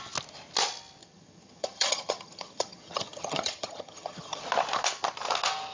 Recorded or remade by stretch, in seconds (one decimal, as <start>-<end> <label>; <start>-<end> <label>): 0.0-1.0 recorded; 1.0-4.4 remade; 4.4-5.7 recorded